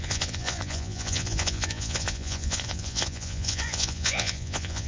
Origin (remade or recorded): remade